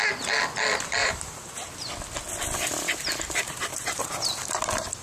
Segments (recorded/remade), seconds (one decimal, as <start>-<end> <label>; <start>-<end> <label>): 0.0-1.0 recorded; 1.0-1.7 remade; 1.7-3.7 recorded; 3.7-4.5 remade; 4.5-5.0 recorded